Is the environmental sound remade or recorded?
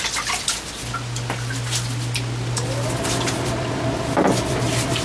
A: recorded